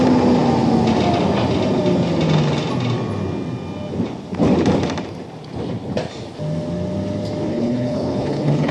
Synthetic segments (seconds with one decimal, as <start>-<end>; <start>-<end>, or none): 7.5-8.7